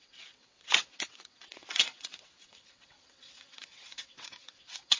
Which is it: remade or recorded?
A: remade